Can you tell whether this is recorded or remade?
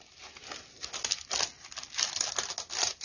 recorded